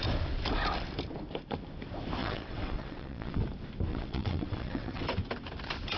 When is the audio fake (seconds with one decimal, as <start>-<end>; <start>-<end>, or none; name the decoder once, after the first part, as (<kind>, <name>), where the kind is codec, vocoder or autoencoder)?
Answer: 2.2-3.4 (vocoder, WaveNeXt); 3.9-5.0